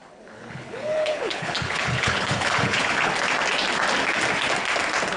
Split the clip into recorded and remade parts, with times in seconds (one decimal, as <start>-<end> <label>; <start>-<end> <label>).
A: 0.0-3.1 remade; 3.1-5.2 recorded

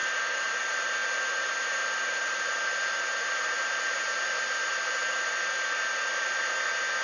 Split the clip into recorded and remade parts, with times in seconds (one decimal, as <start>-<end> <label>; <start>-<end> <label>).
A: 0.0-7.0 recorded